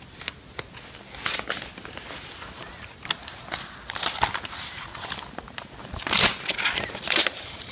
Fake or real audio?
real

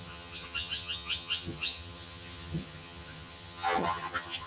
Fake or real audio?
fake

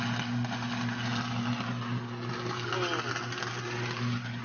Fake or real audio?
real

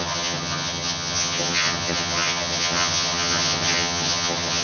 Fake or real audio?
fake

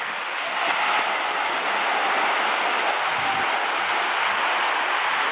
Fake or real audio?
real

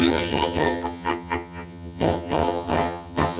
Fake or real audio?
fake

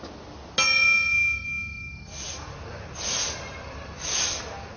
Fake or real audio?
real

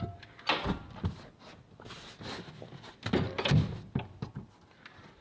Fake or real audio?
real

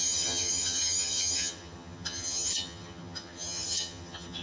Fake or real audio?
fake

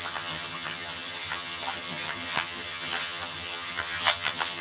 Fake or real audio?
fake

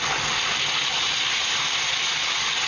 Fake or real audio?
real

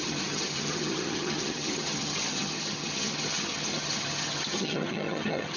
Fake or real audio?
fake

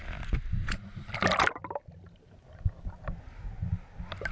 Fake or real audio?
real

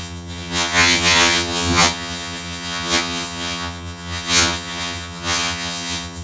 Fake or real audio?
fake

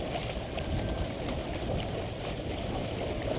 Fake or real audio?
real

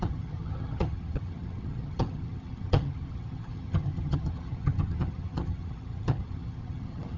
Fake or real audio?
fake